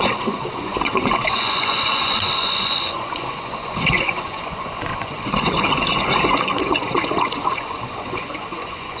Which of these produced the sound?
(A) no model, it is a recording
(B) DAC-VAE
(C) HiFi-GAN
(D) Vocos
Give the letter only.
D